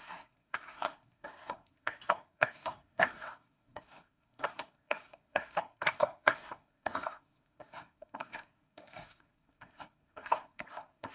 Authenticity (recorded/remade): remade